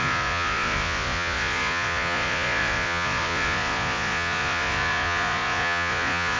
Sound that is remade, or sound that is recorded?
remade